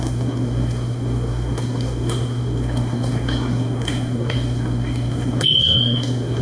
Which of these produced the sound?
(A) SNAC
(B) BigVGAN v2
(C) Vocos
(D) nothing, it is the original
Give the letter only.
A